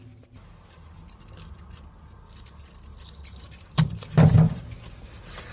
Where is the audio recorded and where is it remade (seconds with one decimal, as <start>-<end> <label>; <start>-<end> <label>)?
0.0-5.5 recorded